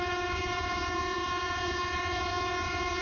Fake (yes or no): yes